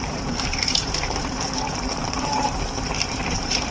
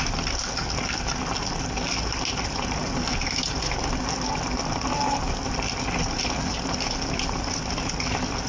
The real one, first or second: second